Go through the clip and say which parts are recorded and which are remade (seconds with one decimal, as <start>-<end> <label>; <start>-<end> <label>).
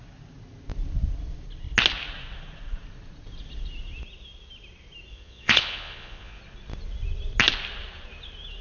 0.0-5.1 recorded; 5.1-6.4 remade; 6.4-8.6 recorded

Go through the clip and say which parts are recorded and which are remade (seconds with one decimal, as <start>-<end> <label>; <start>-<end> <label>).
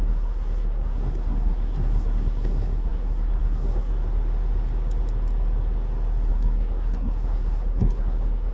0.0-3.9 remade; 3.9-6.3 recorded; 6.3-8.5 remade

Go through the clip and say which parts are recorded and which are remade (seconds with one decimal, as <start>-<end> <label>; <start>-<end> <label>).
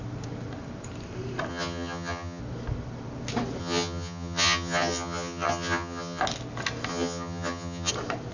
0.0-1.5 recorded; 1.5-2.4 remade; 2.4-3.6 recorded; 3.6-6.2 remade; 6.2-6.9 recorded; 6.9-7.9 remade; 7.9-8.3 recorded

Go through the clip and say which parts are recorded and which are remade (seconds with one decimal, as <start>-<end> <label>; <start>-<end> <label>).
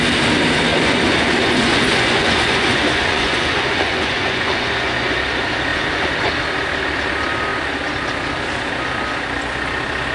0.0-0.7 recorded; 0.7-5.1 remade; 5.1-5.7 recorded; 5.7-6.3 remade; 6.3-10.1 recorded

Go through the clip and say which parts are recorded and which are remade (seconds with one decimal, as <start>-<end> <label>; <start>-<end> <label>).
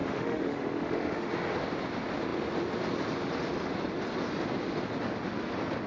0.0-1.3 remade; 1.3-5.9 recorded